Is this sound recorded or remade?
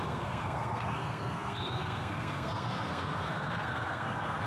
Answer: remade